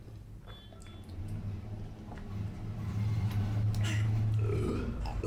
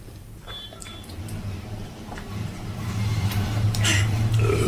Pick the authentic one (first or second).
first